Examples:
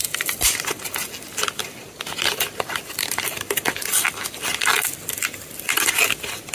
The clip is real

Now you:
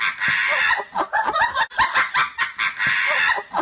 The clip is real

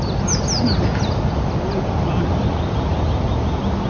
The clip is real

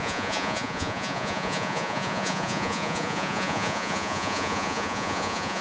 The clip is fake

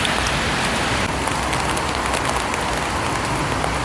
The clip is real